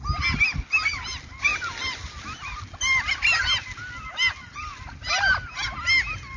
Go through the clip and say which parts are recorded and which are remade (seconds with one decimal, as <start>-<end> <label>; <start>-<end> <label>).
0.0-6.4 recorded